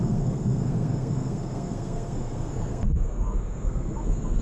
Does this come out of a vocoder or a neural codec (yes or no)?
yes